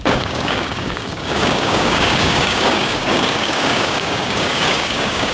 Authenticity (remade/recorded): remade